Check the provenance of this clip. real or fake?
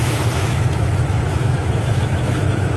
fake